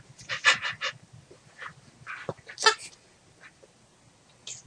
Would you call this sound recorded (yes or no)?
yes